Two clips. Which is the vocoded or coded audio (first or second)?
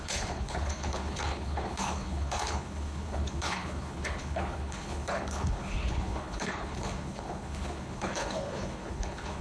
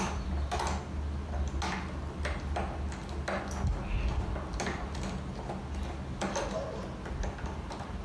first